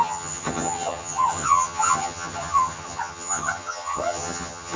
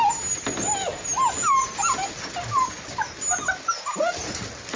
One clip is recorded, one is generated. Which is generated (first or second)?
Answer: first